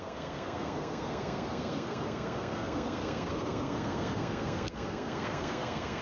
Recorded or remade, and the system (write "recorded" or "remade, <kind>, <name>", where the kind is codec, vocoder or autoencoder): remade, codec, SNAC